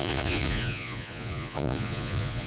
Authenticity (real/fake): fake